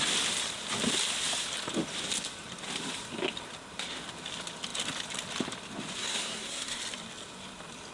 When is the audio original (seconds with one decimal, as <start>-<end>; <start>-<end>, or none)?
0.0-6.0; 6.8-7.9